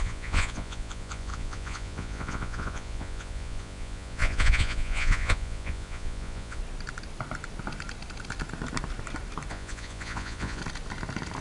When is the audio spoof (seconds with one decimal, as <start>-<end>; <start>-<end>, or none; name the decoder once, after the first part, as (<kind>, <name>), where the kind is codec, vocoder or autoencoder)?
0.0-6.6 (vocoder, Vocos); 9.5-10.6